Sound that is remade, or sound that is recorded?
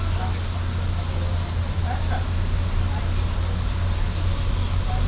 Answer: recorded